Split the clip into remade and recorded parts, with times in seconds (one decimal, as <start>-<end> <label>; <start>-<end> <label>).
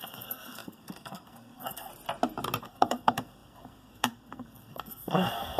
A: 0.0-1.9 remade; 1.9-2.6 recorded; 2.6-5.6 remade